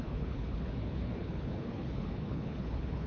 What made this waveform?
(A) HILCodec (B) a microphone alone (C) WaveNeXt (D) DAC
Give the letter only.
A